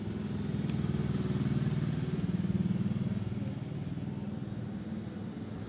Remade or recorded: recorded